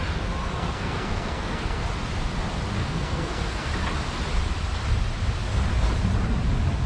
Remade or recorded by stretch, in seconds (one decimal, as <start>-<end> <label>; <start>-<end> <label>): 0.0-0.4 recorded; 0.4-1.8 remade; 1.8-2.8 recorded; 2.8-3.7 remade; 3.7-6.9 recorded